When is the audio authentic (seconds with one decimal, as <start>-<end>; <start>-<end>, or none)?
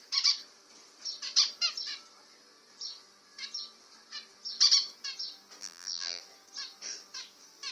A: 0.0-5.6; 6.2-7.7